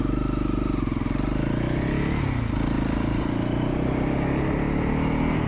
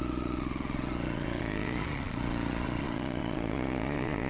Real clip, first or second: first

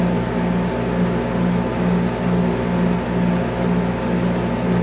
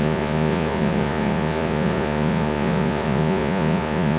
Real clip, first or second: first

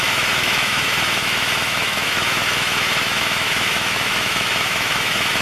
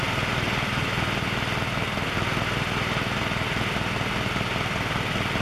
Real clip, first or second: second